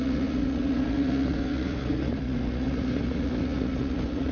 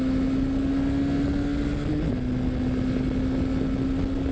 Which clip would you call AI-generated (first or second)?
first